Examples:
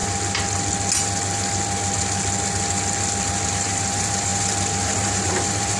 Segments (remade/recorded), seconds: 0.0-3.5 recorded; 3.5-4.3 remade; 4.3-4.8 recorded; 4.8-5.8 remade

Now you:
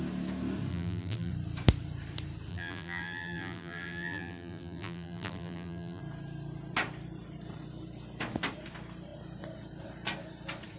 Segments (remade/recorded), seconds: 0.0-0.7 recorded; 0.7-1.3 remade; 1.3-2.5 recorded; 2.5-6.0 remade; 6.0-10.8 recorded

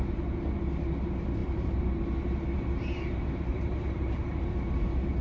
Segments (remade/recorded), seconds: 0.0-1.4 recorded; 1.4-1.9 remade; 1.9-3.5 recorded; 3.5-4.4 remade; 4.4-5.2 recorded

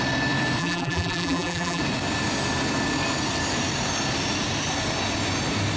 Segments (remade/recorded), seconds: 0.0-0.6 recorded; 0.6-1.8 remade; 1.8-5.8 recorded

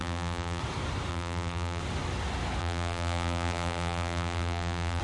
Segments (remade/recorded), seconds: 0.0-0.6 remade; 0.6-1.1 recorded; 1.1-1.8 remade; 1.8-2.6 recorded; 2.6-5.0 remade

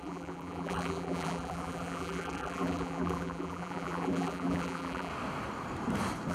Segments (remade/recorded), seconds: 0.0-5.1 remade; 5.1-6.3 recorded

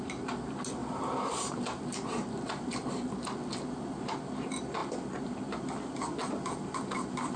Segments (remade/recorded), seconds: 0.0-0.8 recorded; 0.8-2.7 remade; 2.7-6.2 recorded; 6.2-7.4 remade